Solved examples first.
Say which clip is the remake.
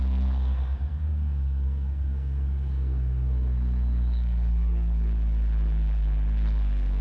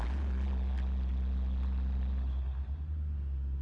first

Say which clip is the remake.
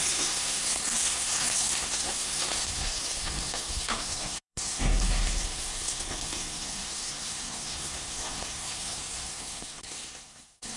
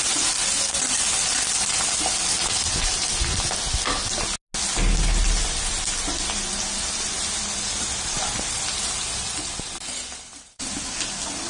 first